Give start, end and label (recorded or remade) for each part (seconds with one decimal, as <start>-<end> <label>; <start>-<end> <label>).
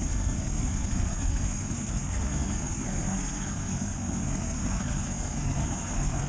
0.0-6.3 remade